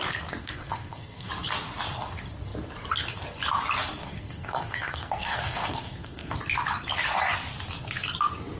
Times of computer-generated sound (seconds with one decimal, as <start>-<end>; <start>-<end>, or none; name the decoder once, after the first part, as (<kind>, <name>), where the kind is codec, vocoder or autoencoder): 0.4-1.3 (codec, SNAC); 4.0-6.4